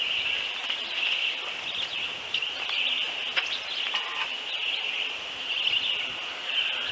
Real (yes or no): yes